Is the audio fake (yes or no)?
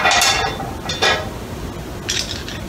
no